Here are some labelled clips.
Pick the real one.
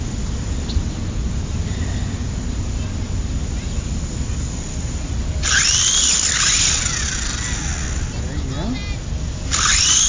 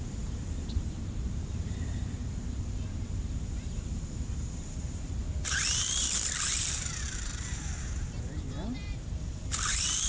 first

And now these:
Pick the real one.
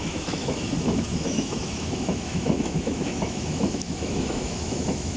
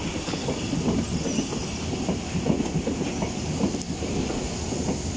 second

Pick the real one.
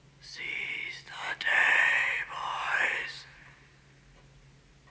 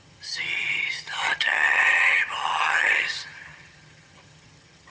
first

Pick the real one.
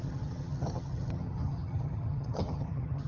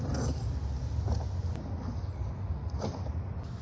second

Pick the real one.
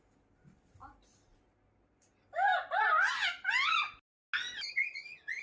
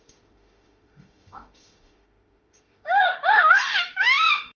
first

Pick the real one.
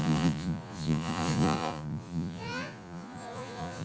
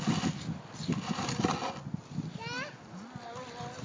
second